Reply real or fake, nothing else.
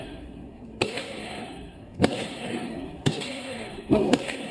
fake